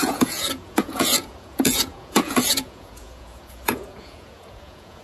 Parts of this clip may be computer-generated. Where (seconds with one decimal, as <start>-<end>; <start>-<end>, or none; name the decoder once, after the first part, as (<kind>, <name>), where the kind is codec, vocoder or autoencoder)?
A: 0.0-5.0 (vocoder, Vocos)